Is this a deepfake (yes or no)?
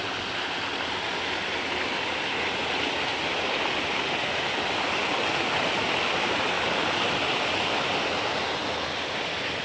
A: no